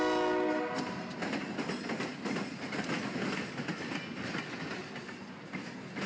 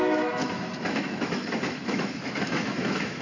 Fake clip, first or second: second